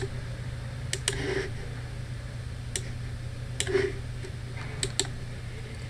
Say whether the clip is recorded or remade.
recorded